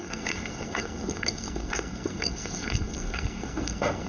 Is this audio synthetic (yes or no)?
yes